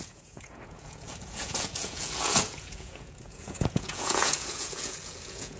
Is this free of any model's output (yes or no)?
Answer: no